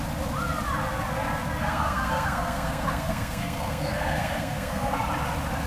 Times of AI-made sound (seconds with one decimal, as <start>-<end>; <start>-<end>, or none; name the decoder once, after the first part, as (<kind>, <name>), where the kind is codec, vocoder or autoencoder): 1.6-5.0 (codec, SNAC)